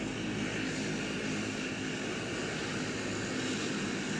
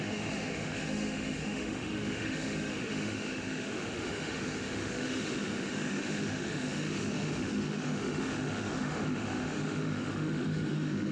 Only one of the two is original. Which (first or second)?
first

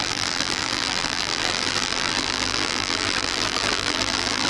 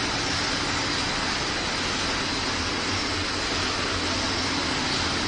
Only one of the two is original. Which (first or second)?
second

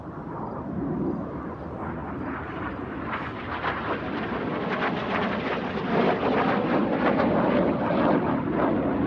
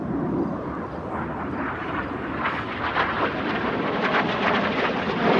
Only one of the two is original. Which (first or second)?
first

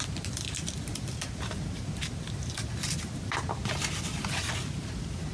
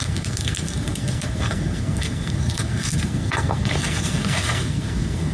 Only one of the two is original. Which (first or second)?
first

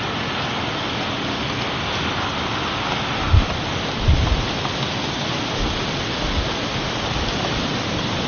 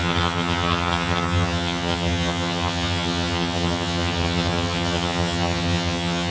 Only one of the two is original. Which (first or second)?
first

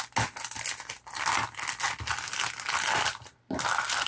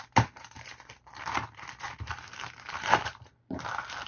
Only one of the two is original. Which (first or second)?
first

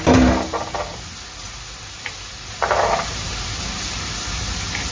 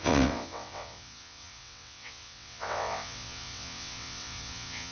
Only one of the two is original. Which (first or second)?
first